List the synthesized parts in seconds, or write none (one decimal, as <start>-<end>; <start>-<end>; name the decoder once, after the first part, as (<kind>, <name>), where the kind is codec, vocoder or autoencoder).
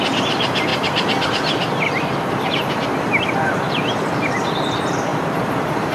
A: none